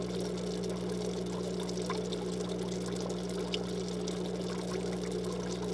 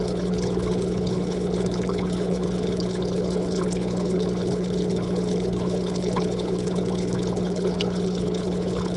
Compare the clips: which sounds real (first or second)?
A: first